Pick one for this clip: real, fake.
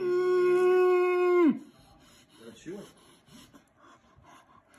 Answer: real